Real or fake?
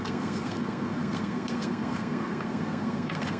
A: fake